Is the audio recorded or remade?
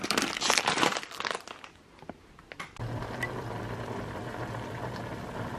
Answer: recorded